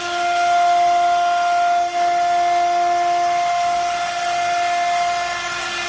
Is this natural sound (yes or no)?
yes